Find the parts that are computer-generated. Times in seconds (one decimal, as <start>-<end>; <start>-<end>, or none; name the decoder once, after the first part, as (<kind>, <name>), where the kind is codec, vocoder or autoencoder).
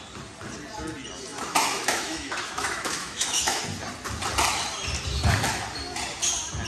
1.3-3.6 (autoencoder, DAC-VAE)